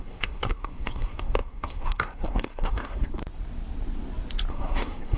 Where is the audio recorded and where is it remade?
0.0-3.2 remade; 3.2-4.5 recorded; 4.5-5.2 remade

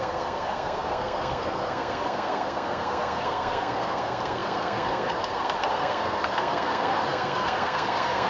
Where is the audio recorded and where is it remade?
0.0-8.3 remade

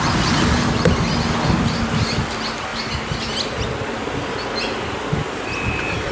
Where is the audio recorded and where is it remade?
0.0-6.1 recorded

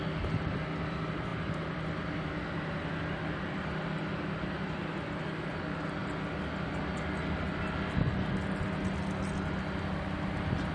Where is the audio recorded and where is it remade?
0.0-10.7 recorded

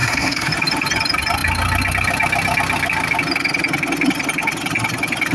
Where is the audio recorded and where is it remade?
0.0-0.5 remade; 0.5-5.3 recorded

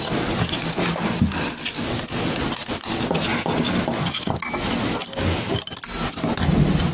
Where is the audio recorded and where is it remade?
0.0-6.9 recorded